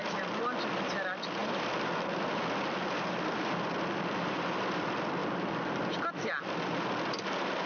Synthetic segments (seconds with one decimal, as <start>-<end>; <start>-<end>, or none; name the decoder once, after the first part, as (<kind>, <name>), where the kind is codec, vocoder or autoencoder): 0.0-0.6 (vocoder, BigVGAN v2); 1.4-3.3; 5.2-6.4